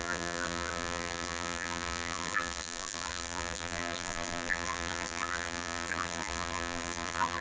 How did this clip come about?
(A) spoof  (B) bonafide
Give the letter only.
A